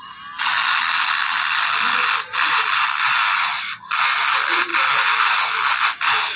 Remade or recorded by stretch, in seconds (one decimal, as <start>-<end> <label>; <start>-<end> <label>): 0.0-0.5 recorded; 0.5-4.3 remade; 4.3-4.7 recorded; 4.7-5.7 remade; 5.7-6.4 recorded